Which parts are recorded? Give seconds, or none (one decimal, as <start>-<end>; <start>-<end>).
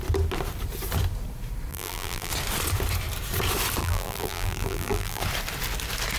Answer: 0.0-1.7; 2.3-3.8; 5.2-6.2